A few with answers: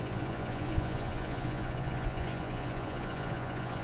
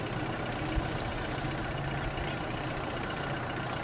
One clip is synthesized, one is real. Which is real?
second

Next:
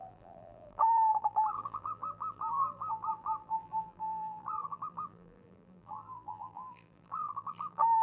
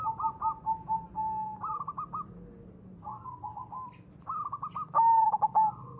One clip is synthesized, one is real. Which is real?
second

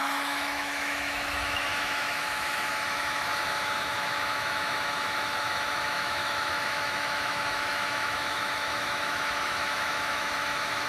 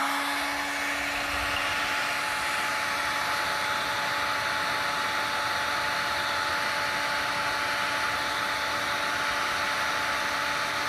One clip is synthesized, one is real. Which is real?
second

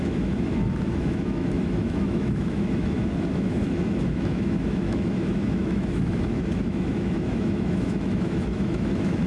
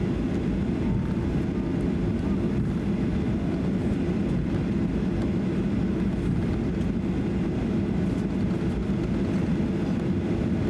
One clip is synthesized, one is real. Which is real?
second